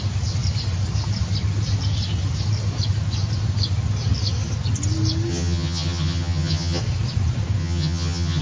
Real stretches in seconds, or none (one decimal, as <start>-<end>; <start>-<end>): 0.0-5.3; 6.8-7.6